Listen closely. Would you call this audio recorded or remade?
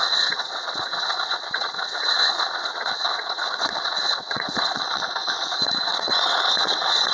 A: remade